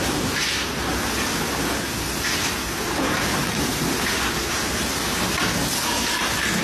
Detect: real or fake real